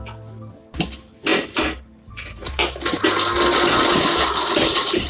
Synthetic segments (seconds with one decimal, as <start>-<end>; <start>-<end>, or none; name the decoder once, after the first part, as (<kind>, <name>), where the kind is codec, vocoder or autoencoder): none